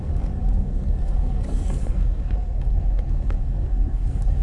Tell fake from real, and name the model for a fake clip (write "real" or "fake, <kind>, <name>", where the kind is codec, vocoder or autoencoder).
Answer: fake, codec, SNAC